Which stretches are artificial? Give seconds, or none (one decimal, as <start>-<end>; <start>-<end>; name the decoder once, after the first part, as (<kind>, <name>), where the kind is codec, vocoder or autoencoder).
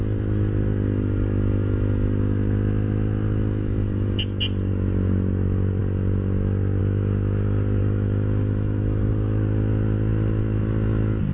7.8-9.1 (autoencoder, DAC-VAE)